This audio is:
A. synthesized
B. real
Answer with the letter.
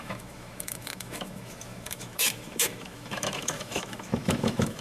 A